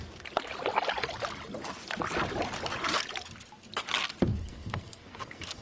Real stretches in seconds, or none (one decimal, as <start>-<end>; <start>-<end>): 0.0-4.3